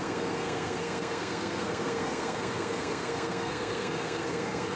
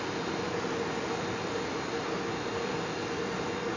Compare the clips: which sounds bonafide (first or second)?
second